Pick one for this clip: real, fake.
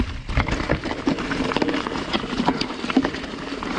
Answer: fake